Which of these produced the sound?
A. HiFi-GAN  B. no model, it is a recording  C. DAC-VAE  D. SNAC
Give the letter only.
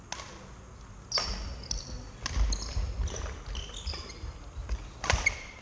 B